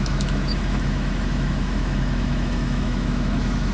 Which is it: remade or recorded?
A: remade